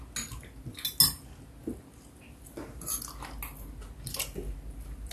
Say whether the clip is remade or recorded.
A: recorded